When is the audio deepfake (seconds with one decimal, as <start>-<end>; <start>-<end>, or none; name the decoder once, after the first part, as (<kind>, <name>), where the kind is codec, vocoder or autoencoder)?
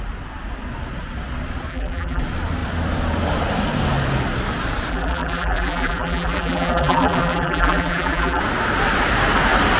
1.7-2.2 (vocoder, BigVGAN v2); 4.9-8.4